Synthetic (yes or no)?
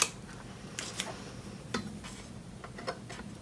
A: no